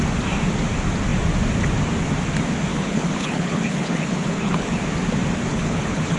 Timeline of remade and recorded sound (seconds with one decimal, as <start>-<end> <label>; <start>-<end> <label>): 0.0-2.7 recorded; 2.7-4.7 remade; 4.7-5.5 recorded; 5.5-6.2 remade